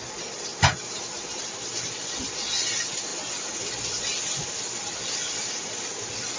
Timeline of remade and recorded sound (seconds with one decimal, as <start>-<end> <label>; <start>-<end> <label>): 0.0-6.4 recorded